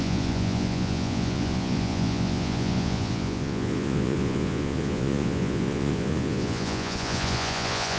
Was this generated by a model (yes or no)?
yes